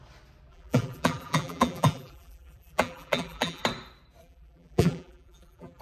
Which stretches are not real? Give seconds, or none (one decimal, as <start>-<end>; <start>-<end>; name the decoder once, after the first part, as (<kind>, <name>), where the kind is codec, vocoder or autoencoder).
0.5-3.6 (vocoder, BigVGAN v2); 4.2-5.8